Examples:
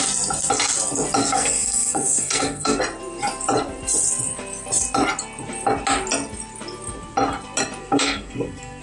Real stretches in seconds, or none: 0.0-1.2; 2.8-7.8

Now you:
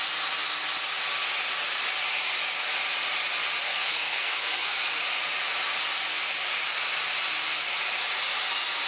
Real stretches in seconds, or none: 0.0-3.7; 5.0-8.9

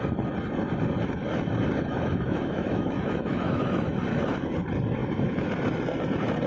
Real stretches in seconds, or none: 0.0-1.9; 3.9-5.0; 5.5-6.5

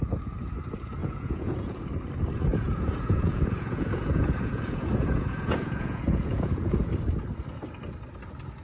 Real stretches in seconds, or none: 0.0-1.0; 1.8-2.5; 6.9-8.6

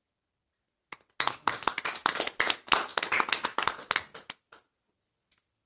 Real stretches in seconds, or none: 0.0-5.7

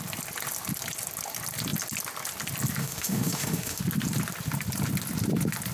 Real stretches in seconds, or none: 0.0-2.8; 3.8-5.7

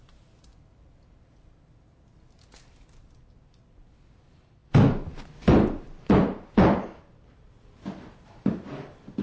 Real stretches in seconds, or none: 0.0-9.2